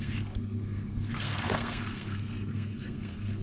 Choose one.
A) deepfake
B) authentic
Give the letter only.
A